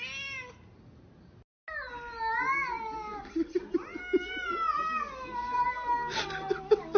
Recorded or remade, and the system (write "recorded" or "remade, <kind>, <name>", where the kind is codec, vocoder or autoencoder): recorded